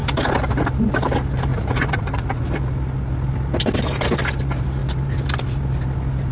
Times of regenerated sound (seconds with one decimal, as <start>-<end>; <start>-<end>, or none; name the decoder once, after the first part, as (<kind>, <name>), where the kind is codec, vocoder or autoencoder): 1.5-2.4 (vocoder, Vocos)